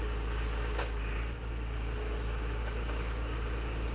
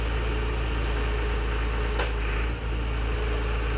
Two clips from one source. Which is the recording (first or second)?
second